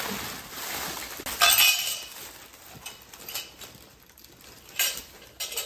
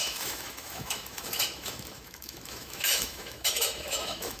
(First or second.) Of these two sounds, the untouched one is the first